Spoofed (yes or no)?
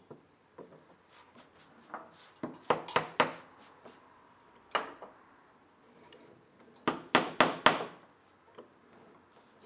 no